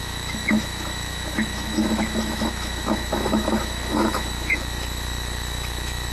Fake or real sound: fake